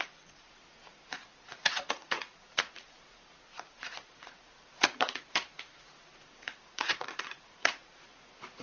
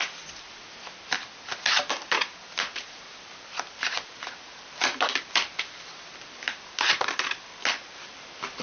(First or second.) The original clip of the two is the second